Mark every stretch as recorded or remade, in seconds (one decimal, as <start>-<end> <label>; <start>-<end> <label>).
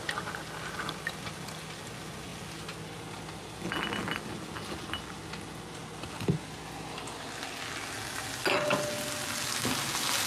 0.0-10.3 recorded